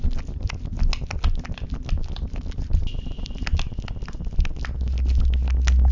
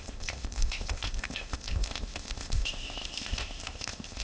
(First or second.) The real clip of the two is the first